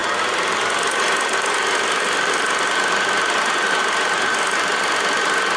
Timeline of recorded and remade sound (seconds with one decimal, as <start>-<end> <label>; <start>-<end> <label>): 0.0-5.6 recorded